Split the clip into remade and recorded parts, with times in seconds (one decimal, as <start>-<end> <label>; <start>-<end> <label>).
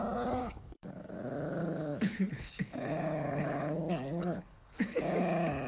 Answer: 0.0-0.4 recorded; 0.4-1.1 remade; 1.1-1.6 recorded; 1.6-3.8 remade; 3.8-4.2 recorded; 4.2-5.0 remade; 5.0-5.7 recorded